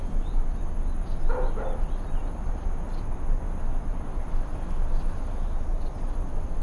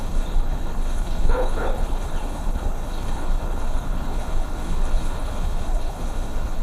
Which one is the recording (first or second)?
first